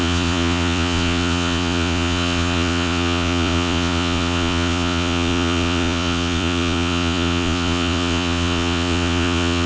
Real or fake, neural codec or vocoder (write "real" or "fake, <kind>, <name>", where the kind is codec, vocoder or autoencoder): fake, vocoder, Vocos